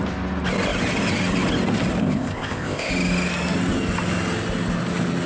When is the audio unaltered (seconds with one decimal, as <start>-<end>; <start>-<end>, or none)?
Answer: 0.0-2.0; 2.9-5.3